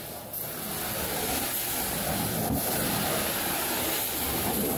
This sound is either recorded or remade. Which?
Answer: recorded